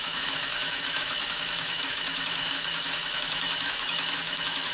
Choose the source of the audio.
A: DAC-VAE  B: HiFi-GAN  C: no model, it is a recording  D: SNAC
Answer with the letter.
A